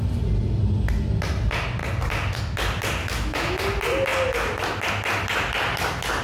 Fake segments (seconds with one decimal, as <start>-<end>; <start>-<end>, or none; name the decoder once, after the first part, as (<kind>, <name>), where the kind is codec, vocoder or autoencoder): 3.0-3.6 (autoencoder, DAC-VAE)